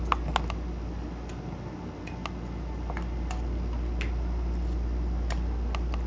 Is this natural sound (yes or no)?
yes